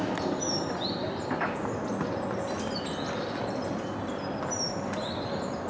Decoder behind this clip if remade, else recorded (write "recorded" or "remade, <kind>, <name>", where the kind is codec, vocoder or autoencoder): recorded